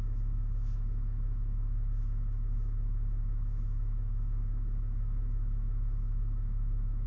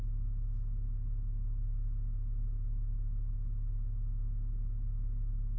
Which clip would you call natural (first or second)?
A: second